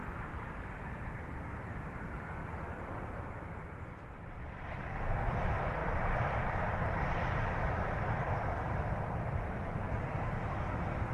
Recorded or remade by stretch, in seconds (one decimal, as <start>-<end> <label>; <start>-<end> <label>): 0.0-5.8 recorded; 5.8-11.1 remade